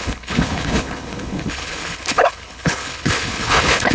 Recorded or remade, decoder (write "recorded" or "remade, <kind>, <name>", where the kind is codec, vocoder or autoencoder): remade, codec, HILCodec